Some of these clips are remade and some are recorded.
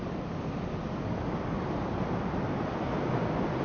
recorded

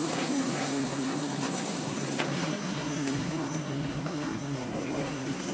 remade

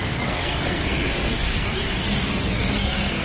remade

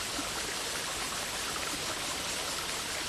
recorded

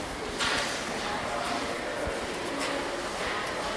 recorded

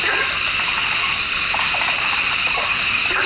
recorded